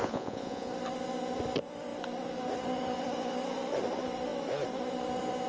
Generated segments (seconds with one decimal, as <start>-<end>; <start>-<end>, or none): 0.0-0.7